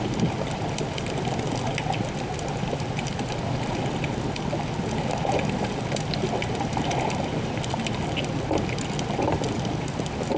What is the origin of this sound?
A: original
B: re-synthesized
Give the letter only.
A